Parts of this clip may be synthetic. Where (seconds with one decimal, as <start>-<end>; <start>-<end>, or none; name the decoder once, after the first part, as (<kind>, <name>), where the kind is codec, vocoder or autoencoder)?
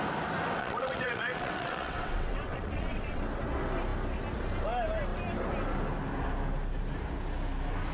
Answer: 0.6-3.2 (vocoder, WaveNeXt)